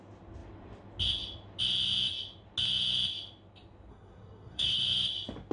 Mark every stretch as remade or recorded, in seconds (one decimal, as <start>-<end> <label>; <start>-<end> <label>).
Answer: 0.0-3.9 recorded; 3.9-4.8 remade; 4.8-5.5 recorded